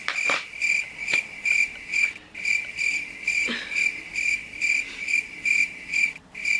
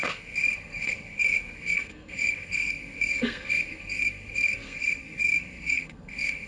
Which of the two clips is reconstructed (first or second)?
second